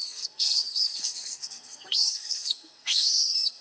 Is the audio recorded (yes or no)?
no